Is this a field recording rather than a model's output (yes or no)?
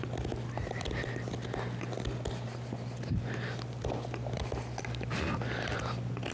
yes